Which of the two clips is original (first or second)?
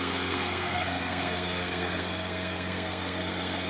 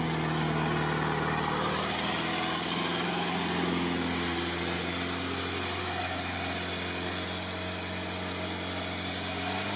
second